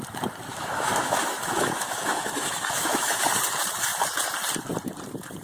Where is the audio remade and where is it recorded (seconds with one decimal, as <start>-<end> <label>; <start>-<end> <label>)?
0.0-0.5 recorded; 0.5-3.3 remade; 3.3-5.4 recorded